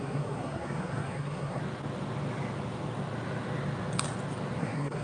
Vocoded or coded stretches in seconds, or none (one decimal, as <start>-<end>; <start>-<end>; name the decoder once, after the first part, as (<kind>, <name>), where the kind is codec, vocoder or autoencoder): 0.0-1.6 (codec, SNAC); 4.6-5.0